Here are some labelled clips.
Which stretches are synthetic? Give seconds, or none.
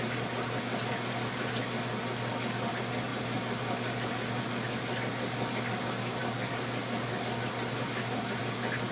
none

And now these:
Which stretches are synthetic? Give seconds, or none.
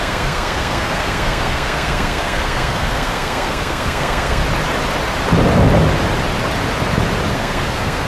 0.0-4.4 (codec, SNAC); 7.3-8.1